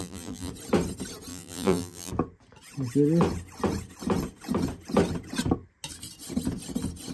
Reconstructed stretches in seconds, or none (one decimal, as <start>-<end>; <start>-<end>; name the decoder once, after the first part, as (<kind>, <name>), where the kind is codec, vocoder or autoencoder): 0.0-0.5 (vocoder, BigVGAN v2); 1.3-2.1